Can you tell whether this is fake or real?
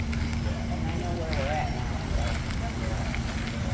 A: real